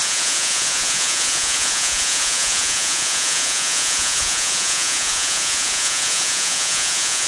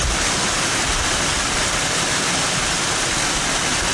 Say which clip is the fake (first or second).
first